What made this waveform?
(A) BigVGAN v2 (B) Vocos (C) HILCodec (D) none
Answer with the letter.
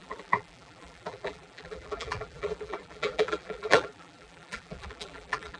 A